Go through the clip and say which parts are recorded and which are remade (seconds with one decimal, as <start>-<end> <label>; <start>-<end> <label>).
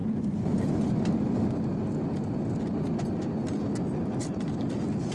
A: 0.0-5.1 recorded